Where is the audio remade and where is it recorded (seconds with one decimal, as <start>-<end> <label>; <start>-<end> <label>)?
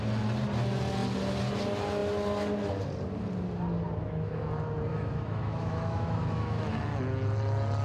0.0-4.0 recorded; 4.0-4.5 remade; 4.5-4.9 recorded; 4.9-7.0 remade; 7.0-7.8 recorded